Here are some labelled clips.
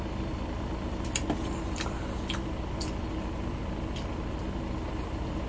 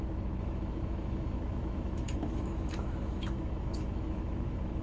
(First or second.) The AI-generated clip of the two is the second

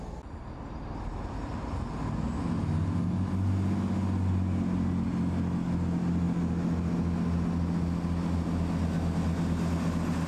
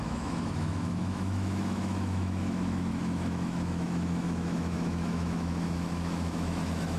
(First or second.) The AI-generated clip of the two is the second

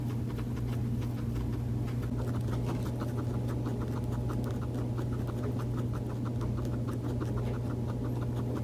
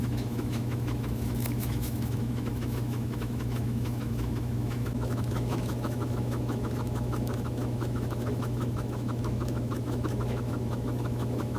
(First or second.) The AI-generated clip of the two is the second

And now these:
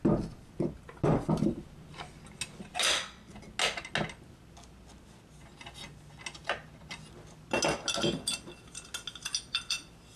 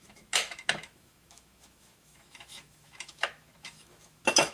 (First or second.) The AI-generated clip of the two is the second